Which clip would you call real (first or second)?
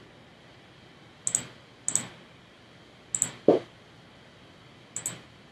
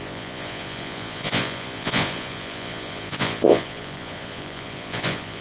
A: first